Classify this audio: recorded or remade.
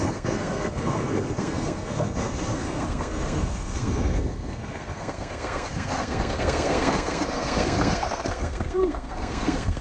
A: remade